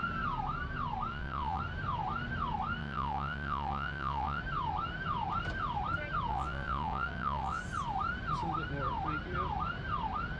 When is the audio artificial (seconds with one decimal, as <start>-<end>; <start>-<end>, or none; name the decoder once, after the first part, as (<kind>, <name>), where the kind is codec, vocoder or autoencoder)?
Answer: 1.1-1.6 (vocoder, WaveNeXt); 2.8-4.4; 6.3-7.6